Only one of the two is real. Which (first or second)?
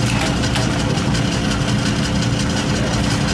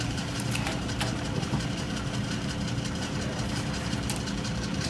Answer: first